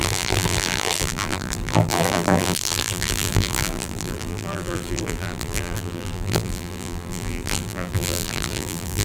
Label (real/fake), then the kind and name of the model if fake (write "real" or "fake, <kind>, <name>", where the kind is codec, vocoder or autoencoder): fake, vocoder, BigVGAN v2